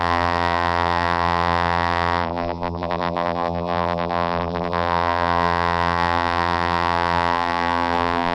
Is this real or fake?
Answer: fake